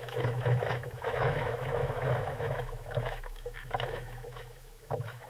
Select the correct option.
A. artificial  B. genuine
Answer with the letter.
A